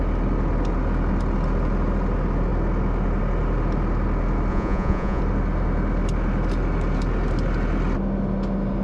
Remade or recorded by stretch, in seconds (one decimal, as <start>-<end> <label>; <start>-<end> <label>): 0.0-4.5 recorded; 4.5-5.2 remade; 5.2-8.8 recorded